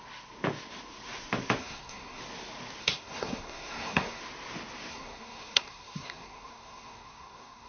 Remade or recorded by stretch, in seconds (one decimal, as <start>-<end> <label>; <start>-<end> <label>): 0.0-1.6 recorded; 1.6-2.2 remade; 2.2-2.8 recorded; 2.8-4.2 remade; 4.2-4.9 recorded; 4.9-7.7 remade